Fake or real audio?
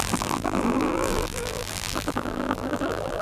fake